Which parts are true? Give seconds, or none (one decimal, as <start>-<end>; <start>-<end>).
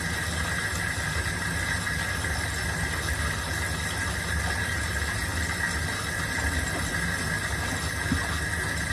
0.0-8.9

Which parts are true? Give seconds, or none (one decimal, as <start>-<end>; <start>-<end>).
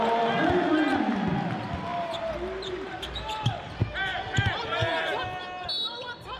0.0-1.9; 3.4-6.4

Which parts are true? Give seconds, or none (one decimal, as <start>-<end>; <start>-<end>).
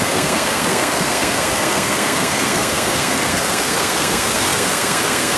none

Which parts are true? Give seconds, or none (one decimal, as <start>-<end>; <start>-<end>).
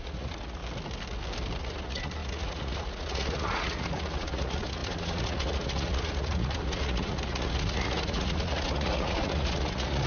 0.6-1.6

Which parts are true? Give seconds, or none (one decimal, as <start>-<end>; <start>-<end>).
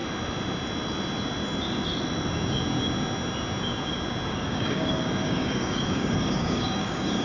0.0-4.3